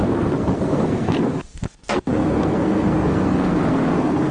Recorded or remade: remade